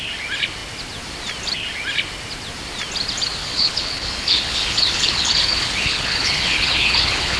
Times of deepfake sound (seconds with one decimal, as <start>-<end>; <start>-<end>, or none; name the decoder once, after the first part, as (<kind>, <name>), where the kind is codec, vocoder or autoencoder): 3.4-7.4 (codec, HILCodec)